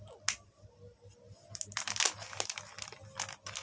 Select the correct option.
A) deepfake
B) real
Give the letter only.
B